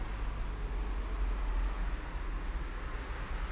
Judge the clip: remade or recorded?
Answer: recorded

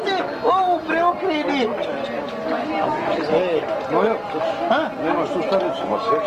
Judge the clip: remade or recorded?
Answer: recorded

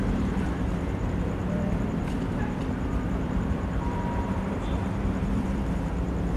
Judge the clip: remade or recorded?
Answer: remade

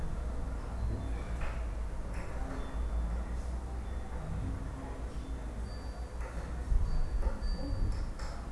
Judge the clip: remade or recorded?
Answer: recorded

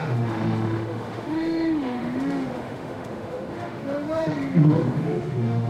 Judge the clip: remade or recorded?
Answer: remade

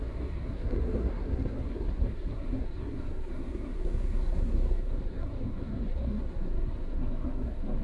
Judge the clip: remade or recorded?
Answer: remade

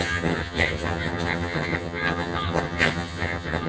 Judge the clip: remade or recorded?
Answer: remade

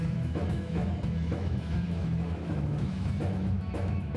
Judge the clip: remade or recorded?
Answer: remade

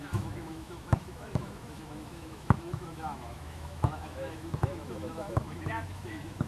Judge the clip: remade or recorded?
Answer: remade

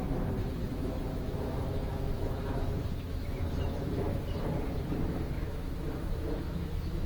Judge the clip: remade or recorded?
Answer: remade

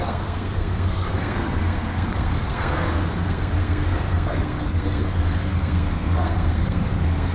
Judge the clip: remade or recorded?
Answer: remade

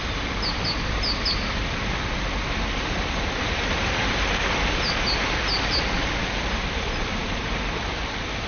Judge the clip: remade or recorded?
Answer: recorded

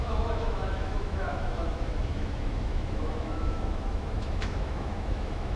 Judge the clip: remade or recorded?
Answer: remade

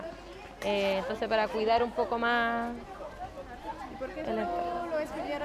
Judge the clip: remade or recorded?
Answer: recorded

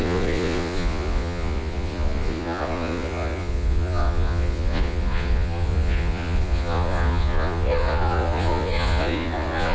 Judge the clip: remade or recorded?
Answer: remade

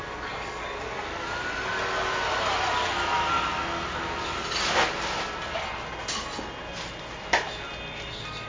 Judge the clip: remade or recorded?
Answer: recorded